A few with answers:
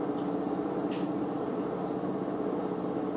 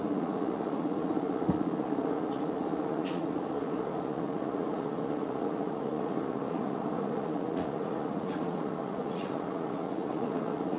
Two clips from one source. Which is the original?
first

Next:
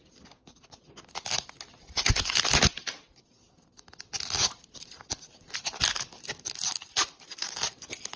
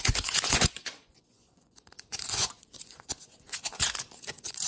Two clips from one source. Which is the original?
first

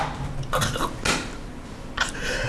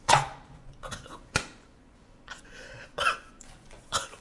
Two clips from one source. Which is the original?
first